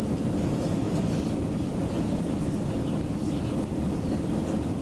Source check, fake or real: real